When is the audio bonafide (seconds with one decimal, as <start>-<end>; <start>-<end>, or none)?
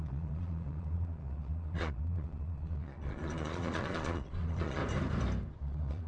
4.8-5.6